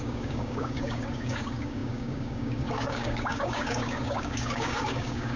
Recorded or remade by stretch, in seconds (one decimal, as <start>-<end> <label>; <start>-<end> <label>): 0.0-5.4 remade